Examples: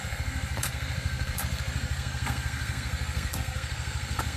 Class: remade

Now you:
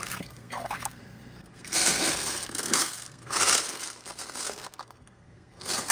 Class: remade